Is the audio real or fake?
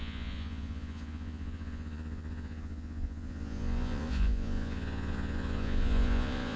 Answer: fake